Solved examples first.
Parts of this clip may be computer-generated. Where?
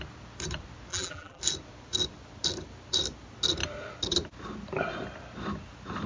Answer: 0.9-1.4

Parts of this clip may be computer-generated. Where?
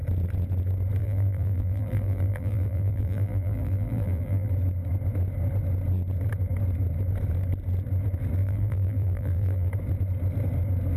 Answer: 1.0-4.5; 8.4-9.7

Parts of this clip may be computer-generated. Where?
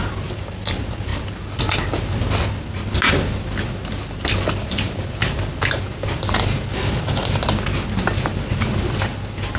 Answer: none